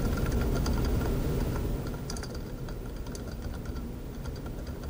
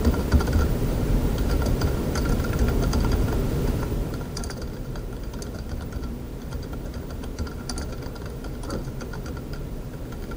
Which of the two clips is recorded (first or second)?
first